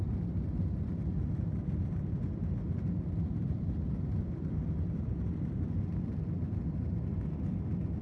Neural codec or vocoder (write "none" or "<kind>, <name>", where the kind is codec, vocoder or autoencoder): none